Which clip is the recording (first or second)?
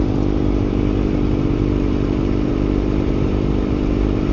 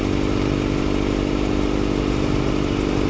second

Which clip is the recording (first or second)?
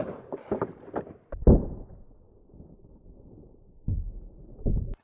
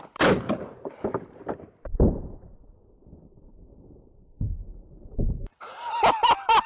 first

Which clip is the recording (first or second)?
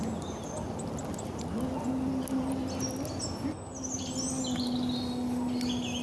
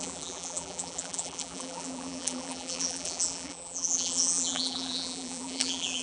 first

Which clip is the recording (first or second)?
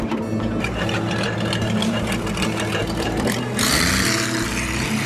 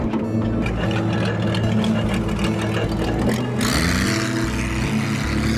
second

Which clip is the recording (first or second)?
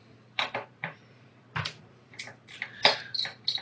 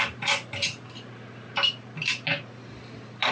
second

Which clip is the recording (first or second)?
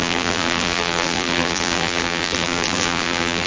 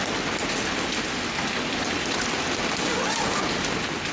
second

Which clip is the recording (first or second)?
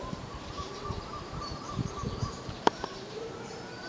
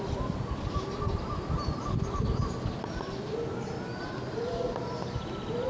second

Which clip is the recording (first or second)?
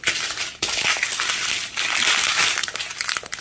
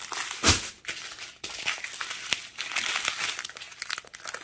second